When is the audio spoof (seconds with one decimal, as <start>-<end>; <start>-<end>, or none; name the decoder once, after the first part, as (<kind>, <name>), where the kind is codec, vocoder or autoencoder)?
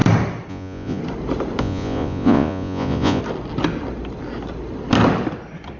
0.5-1.0 (vocoder, Vocos); 1.6-3.2